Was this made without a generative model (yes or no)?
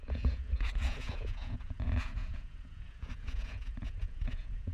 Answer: no